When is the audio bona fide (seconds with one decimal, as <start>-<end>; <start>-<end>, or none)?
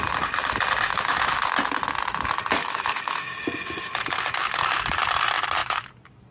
0.0-0.9; 1.4-2.6; 3.3-6.3